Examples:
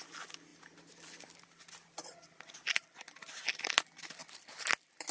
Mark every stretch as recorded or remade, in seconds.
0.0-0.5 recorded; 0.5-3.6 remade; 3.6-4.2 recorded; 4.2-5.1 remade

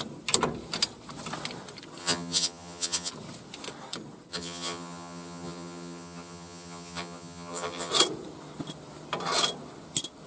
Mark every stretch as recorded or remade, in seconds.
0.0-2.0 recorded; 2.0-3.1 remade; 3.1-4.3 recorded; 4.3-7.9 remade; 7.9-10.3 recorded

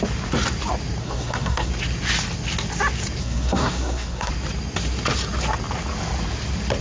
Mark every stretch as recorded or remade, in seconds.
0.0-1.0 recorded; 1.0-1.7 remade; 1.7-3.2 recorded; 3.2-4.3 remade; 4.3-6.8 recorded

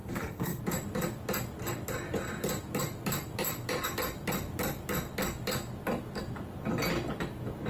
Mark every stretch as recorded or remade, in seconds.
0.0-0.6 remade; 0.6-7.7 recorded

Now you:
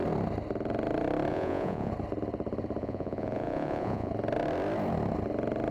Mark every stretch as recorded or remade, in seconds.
0.0-1.3 recorded; 1.3-1.9 remade; 1.9-2.8 recorded; 2.8-4.1 remade; 4.1-5.7 recorded

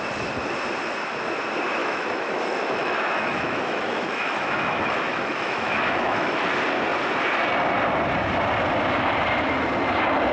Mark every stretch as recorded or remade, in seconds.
0.0-1.8 recorded; 1.8-6.5 remade; 6.5-10.3 recorded

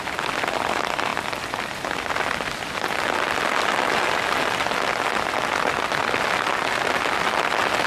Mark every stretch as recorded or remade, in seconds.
0.0-7.9 recorded

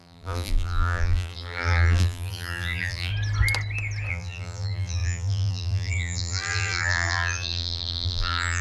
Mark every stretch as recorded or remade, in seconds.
0.0-3.1 remade; 3.1-4.1 recorded; 4.1-8.6 remade